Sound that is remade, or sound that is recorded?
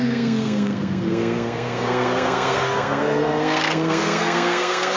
remade